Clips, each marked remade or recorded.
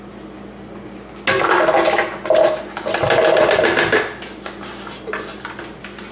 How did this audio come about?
recorded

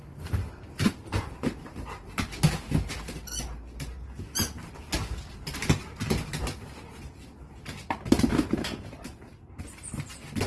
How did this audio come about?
recorded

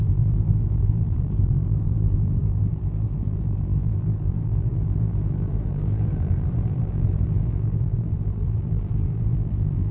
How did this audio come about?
remade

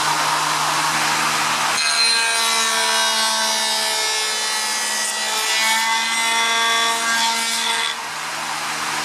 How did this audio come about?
recorded